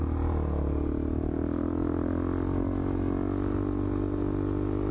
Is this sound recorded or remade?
recorded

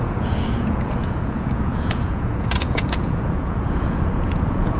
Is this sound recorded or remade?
remade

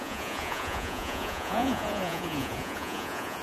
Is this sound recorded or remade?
remade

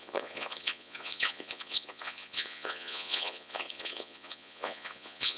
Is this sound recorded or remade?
remade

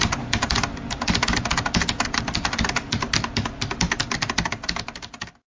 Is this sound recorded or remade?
recorded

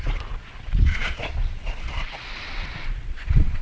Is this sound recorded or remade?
remade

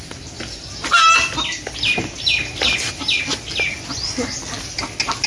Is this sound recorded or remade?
recorded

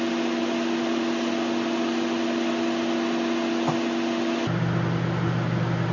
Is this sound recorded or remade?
recorded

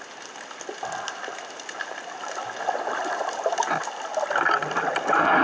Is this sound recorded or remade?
recorded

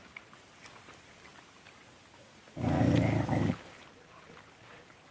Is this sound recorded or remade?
recorded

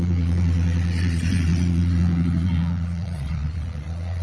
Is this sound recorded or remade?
remade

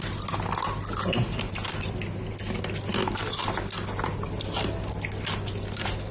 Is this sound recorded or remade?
recorded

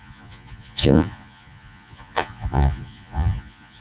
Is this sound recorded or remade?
remade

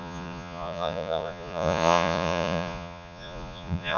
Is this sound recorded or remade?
remade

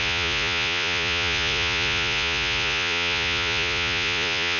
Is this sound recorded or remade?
remade